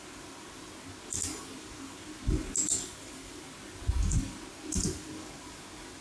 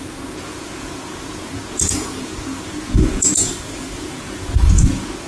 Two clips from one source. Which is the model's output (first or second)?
second